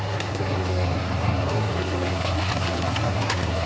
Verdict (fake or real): fake